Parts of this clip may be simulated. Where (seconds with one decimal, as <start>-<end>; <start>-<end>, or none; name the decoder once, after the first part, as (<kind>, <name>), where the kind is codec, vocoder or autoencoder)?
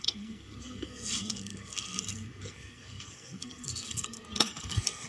0.0-5.1 (codec, SNAC)